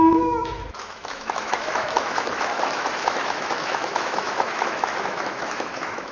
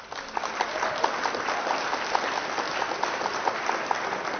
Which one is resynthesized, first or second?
first